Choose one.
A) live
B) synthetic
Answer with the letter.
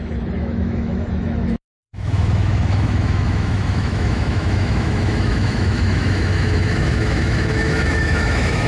B